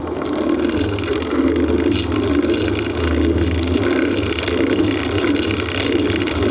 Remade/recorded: recorded